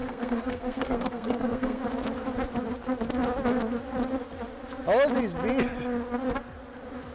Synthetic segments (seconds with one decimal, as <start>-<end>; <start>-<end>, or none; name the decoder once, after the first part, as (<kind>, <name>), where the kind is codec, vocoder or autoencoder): 0.0-1.8 (codec, SNAC)